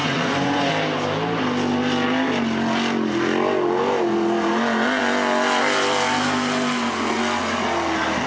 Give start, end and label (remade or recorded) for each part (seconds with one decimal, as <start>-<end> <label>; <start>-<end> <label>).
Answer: 0.0-0.7 remade; 0.7-8.3 recorded